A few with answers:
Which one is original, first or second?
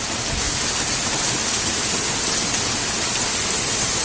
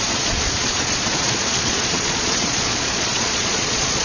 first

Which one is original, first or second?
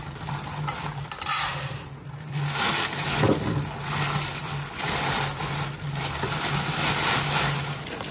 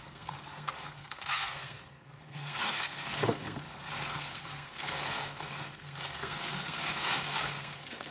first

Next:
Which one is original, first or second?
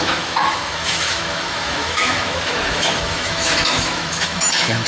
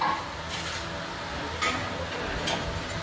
second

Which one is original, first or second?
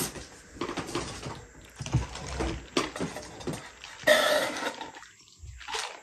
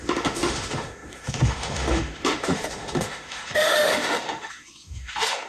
first